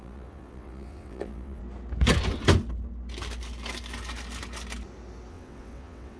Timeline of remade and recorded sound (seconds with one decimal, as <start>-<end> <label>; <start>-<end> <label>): 0.0-1.6 remade; 1.6-5.3 recorded; 5.3-6.2 remade